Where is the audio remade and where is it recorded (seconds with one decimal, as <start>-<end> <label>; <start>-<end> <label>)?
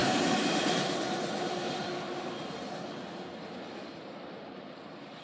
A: 0.0-2.6 remade; 2.6-3.4 recorded; 3.4-3.9 remade; 3.9-4.5 recorded; 4.5-5.2 remade